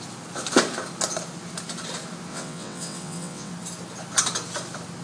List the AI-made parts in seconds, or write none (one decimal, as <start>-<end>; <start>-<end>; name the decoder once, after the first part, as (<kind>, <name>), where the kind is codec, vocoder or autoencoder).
2.3-3.5 (vocoder, WaveNeXt)